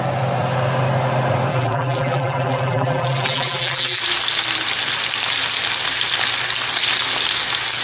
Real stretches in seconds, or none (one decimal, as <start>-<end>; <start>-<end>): 0.0-1.5; 4.0-7.8